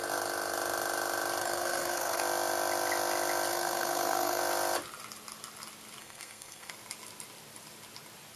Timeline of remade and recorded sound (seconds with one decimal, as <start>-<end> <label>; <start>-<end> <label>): 0.0-1.4 recorded; 1.4-2.2 remade; 2.2-3.5 recorded; 3.5-4.4 remade; 4.4-6.0 recorded; 6.0-6.7 remade; 6.7-8.4 recorded